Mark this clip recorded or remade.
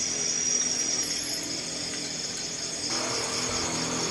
recorded